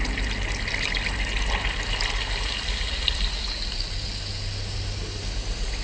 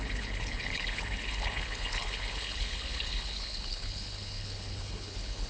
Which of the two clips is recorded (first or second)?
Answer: first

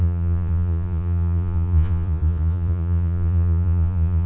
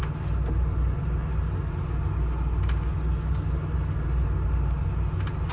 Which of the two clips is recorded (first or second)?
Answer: second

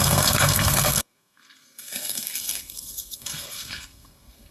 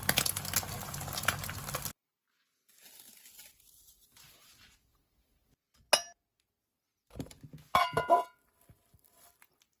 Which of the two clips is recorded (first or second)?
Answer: second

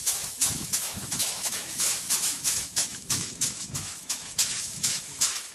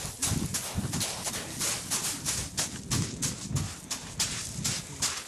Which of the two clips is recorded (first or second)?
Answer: second